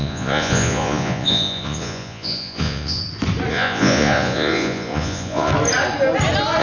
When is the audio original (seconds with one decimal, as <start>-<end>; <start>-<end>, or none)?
3.0-3.5; 5.5-6.6